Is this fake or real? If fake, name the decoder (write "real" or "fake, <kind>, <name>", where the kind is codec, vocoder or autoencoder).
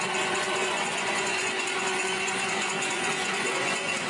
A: fake, vocoder, Vocos